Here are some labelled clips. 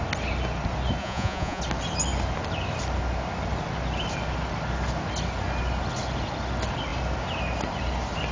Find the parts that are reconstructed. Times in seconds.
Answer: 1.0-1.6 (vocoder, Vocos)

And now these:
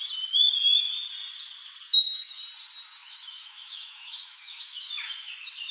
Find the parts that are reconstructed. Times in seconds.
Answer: 1.9-2.4 (autoencoder, DAC-VAE); 3.0-5.3

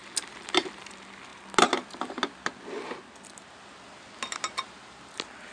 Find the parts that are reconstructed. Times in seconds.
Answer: none

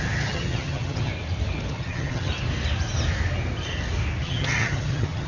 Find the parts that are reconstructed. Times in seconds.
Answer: 0.0-1.1 (vocoder, HiFi-GAN); 1.7-2.3; 4.2-5.3

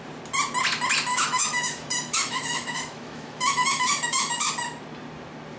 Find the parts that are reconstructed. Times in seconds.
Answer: 1.1-4.5 (autoencoder, DAC-VAE)

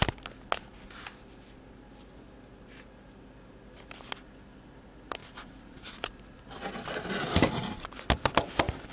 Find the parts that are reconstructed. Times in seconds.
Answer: 5.2-7.1 (vocoder, BigVGAN v2)